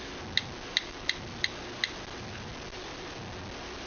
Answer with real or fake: real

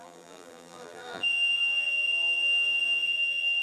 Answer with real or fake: fake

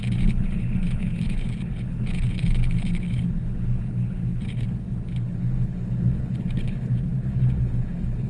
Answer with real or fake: fake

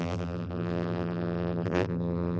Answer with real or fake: fake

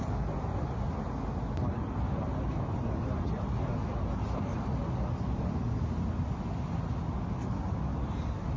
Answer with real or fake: real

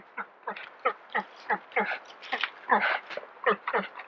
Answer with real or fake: real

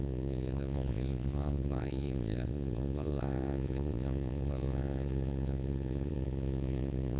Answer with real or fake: fake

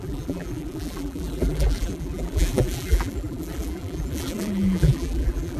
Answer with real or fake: fake